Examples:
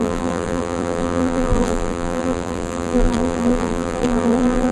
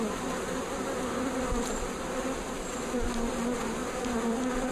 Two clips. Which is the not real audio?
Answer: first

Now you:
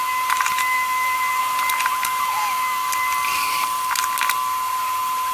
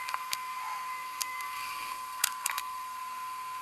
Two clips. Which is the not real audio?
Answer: second